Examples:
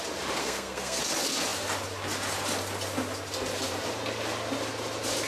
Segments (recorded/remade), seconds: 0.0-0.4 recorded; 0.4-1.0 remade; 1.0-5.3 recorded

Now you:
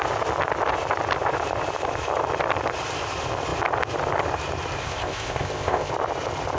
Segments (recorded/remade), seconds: 0.0-4.8 recorded; 4.8-5.9 remade; 5.9-6.6 recorded

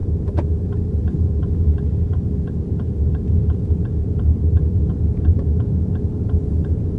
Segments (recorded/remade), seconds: 0.0-4.4 remade; 4.4-4.9 recorded; 4.9-7.0 remade

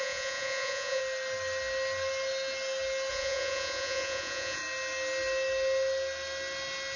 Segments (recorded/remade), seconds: 0.0-1.0 remade; 1.0-3.1 recorded; 3.1-4.6 remade; 4.6-7.0 recorded

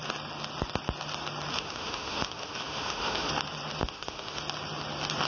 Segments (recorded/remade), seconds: 0.0-1.5 recorded; 1.5-3.3 remade; 3.3-3.8 recorded; 3.8-4.4 remade; 4.4-5.3 recorded

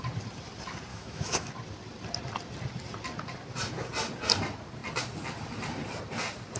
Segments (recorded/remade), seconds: 0.0-0.9 recorded; 0.9-1.5 remade; 1.5-6.6 recorded